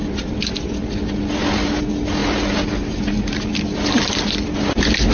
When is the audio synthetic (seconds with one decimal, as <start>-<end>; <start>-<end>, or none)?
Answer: none